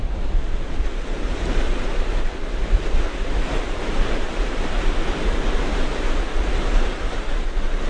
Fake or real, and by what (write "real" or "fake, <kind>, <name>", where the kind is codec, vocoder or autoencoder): fake, vocoder, BigVGAN v2